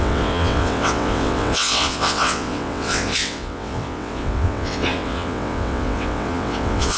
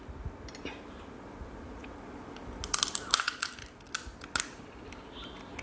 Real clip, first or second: second